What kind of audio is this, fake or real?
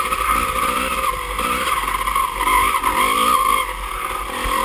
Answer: real